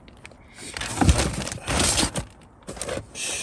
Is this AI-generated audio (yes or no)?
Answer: no